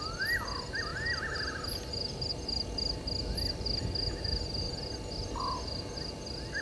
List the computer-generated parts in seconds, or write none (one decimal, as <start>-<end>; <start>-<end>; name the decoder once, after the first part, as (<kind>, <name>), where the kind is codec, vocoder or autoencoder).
none